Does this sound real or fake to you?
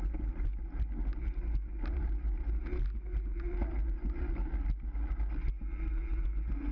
real